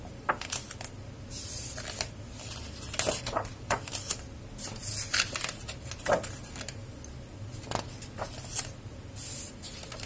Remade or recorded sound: recorded